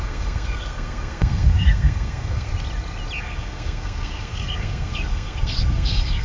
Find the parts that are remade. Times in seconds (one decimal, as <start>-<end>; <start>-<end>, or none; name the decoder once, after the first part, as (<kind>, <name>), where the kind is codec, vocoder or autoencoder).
0.0-2.5 (codec, SNAC); 3.2-6.2